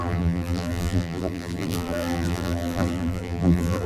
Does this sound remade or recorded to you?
remade